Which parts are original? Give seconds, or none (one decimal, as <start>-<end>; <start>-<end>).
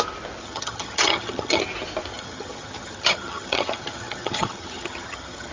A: 0.0-0.4; 1.6-2.1